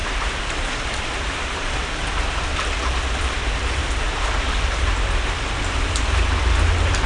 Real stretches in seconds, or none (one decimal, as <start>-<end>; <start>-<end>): 2.1-3.8; 6.0-7.1